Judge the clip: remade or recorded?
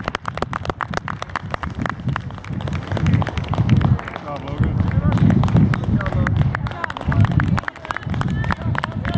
recorded